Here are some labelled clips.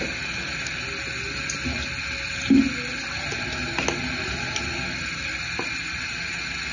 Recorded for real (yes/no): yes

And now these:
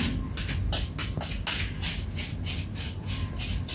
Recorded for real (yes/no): yes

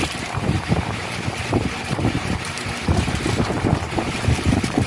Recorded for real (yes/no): no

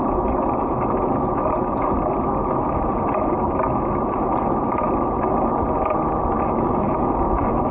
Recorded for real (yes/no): yes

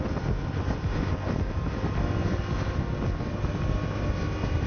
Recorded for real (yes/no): yes